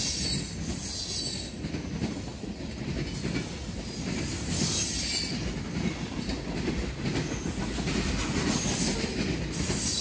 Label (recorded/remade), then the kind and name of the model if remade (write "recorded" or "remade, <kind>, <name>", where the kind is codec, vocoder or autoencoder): recorded